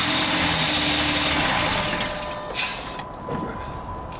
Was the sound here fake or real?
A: real